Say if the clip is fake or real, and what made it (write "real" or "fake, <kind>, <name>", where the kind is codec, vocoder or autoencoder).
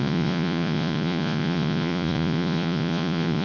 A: fake, vocoder, Vocos